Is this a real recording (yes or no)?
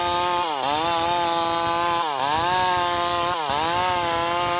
yes